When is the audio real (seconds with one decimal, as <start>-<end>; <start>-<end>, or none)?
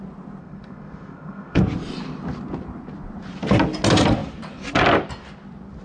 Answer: 0.0-0.4; 1.6-5.8